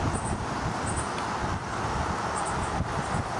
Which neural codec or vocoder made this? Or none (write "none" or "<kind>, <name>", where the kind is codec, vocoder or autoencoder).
none